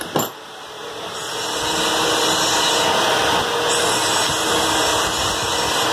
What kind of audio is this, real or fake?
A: real